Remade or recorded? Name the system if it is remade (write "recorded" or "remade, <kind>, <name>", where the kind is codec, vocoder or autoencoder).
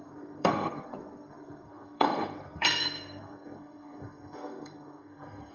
remade, codec, SNAC